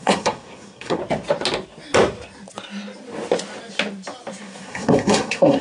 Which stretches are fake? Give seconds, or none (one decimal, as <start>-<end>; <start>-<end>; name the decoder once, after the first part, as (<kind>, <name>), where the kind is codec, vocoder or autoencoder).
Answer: 0.0-1.0 (codec, SNAC); 4.4-5.6